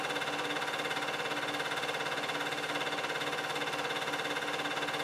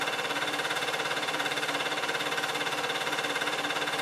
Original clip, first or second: first